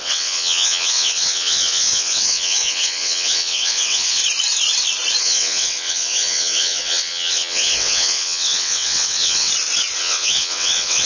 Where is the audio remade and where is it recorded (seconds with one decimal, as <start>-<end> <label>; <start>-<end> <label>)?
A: 0.0-4.2 remade; 4.2-5.2 recorded; 5.2-9.5 remade; 9.5-10.0 recorded; 10.0-11.1 remade